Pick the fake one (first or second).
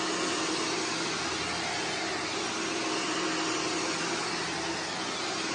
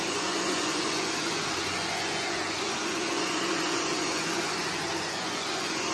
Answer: second